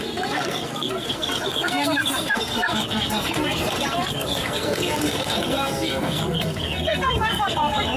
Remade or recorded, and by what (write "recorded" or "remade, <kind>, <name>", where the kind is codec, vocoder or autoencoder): remade, codec, SNAC